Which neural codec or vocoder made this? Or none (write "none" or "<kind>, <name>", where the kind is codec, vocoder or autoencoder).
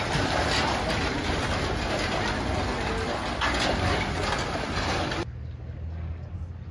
none